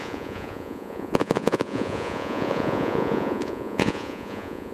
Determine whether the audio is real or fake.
fake